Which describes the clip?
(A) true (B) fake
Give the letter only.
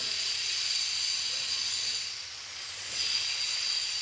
B